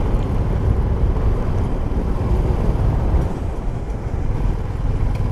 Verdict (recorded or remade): recorded